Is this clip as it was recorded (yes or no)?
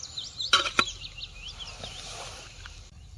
yes